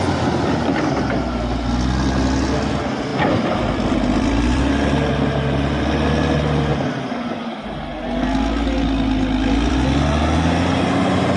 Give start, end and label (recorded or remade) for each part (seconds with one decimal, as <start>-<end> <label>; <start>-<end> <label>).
0.0-3.1 recorded; 3.1-4.6 remade; 4.6-6.7 recorded; 6.7-7.3 remade; 7.3-11.4 recorded